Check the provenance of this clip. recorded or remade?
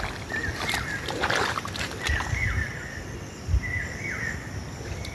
recorded